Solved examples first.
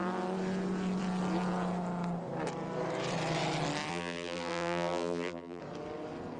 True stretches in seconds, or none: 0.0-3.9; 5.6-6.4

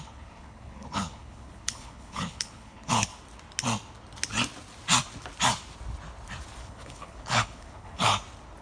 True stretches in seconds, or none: 3.1-6.6; 8.1-8.6